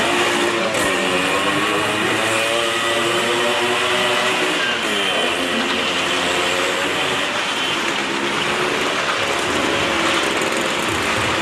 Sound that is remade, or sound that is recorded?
recorded